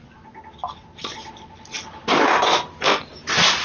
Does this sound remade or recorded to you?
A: recorded